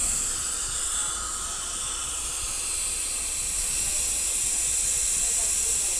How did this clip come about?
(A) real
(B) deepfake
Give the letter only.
A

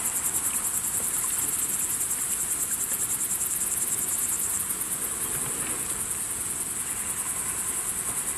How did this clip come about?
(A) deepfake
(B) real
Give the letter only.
B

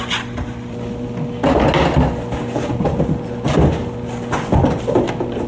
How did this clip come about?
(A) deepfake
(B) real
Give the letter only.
B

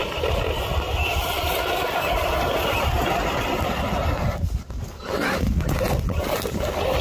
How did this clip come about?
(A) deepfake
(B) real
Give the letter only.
B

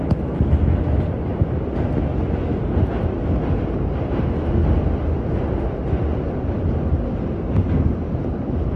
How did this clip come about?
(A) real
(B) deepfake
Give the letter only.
A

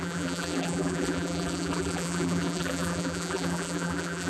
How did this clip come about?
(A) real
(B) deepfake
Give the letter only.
B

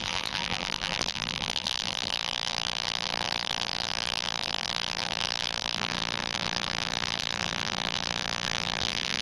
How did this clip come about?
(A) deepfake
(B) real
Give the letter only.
A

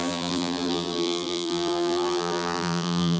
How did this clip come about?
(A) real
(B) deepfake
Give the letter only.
B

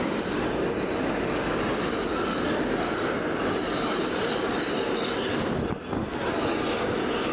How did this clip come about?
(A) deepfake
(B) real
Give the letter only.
B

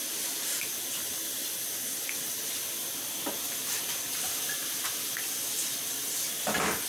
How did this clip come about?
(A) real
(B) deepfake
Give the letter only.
A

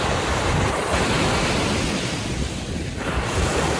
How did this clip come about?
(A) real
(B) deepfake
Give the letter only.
B